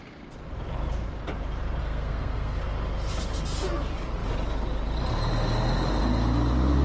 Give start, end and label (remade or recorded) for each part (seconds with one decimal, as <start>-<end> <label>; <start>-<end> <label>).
0.0-1.8 recorded; 1.8-2.6 remade; 2.6-6.8 recorded